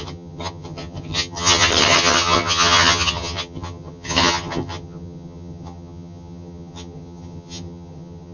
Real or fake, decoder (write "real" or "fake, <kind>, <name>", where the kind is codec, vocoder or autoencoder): fake, vocoder, HiFi-GAN